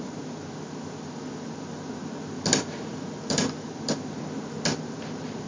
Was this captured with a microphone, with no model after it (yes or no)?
yes